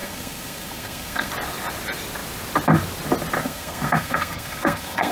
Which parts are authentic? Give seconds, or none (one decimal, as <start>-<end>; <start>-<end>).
1.3-3.4